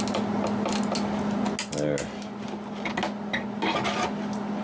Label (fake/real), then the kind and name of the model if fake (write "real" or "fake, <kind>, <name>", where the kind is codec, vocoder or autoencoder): real